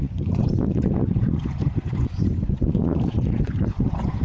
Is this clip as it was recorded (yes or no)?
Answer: no